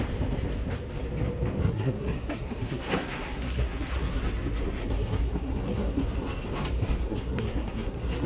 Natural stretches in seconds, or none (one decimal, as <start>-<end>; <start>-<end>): 0.0-1.6; 4.2-4.8; 6.0-7.1